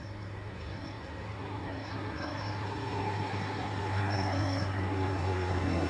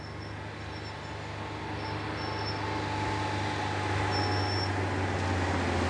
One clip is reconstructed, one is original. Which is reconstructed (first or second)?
first